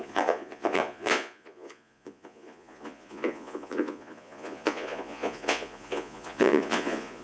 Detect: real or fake fake